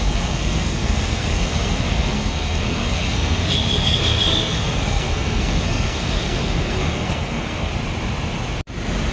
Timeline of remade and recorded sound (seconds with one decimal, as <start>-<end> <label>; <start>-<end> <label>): 0.0-7.7 remade; 7.7-9.1 recorded